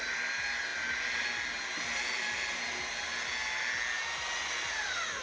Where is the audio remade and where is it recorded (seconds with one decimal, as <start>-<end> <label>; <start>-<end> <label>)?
0.0-5.2 recorded